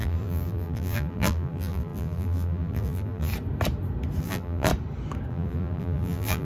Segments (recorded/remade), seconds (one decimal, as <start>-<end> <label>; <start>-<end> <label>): 0.0-3.3 remade; 3.3-4.2 recorded; 4.2-4.7 remade; 4.7-5.3 recorded; 5.3-6.4 remade